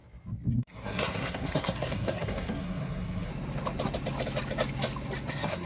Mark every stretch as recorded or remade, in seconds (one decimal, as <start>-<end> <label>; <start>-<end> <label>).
0.0-0.5 recorded; 0.5-3.3 remade; 3.3-5.3 recorded; 5.3-5.7 remade